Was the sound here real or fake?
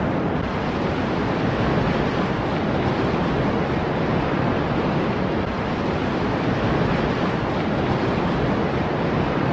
real